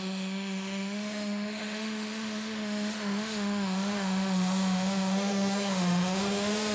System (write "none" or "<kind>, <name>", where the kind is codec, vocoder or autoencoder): autoencoder, DAC-VAE